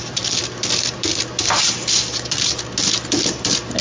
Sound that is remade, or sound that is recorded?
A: recorded